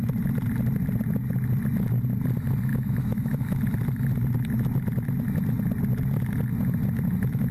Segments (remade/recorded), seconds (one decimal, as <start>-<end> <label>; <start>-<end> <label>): 0.0-2.7 recorded; 2.7-3.6 remade; 3.6-7.5 recorded